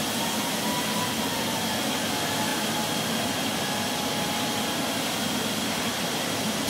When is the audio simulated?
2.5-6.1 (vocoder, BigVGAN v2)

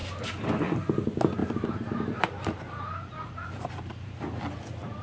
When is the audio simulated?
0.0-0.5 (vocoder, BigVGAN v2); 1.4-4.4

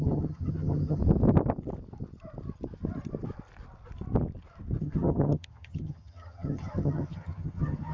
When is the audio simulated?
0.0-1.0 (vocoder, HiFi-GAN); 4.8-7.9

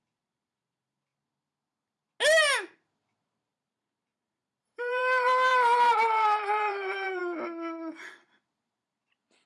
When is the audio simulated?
0.0-1.1 (vocoder, BigVGAN v2); 3.2-7.2; 8.7-9.5

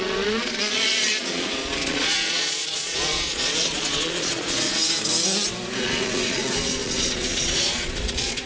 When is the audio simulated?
0.0-4.8 (vocoder, Vocos); 5.8-8.5

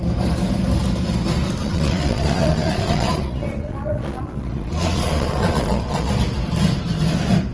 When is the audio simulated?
1.6-6.1 (vocoder, Vocos)